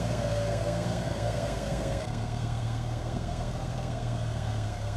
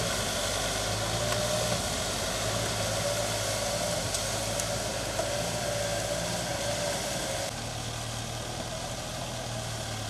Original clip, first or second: second